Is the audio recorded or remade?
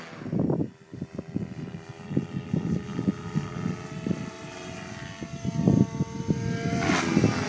recorded